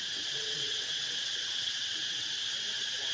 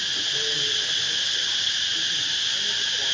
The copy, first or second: first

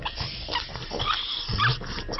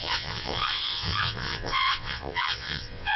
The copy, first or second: second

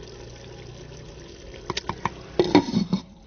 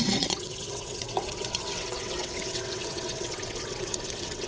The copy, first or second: second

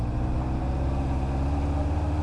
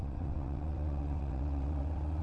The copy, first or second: second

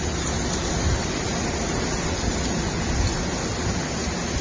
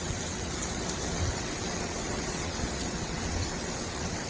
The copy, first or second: second